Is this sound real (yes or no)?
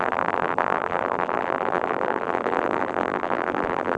no